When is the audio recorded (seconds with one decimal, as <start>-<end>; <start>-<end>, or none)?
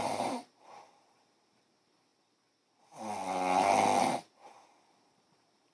2.1-5.0